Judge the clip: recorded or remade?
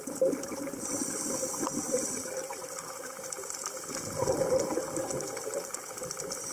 recorded